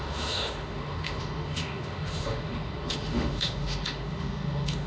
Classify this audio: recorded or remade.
remade